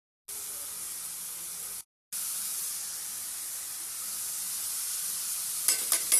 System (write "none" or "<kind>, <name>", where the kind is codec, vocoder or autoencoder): none